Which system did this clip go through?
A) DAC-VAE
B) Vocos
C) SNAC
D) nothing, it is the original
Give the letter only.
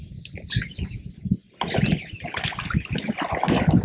D